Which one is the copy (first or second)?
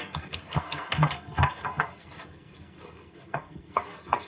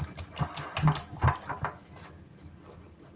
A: first